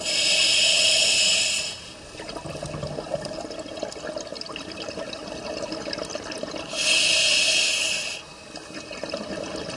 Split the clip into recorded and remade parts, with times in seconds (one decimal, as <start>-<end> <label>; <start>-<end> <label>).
0.0-9.8 recorded